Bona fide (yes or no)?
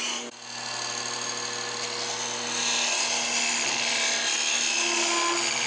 yes